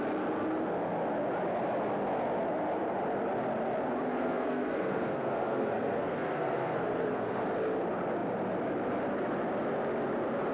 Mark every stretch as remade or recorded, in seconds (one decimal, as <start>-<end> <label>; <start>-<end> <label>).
0.0-4.1 recorded; 4.1-7.4 remade; 7.4-10.5 recorded